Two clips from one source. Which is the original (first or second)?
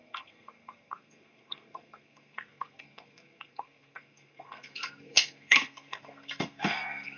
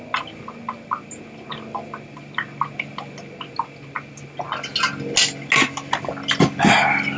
second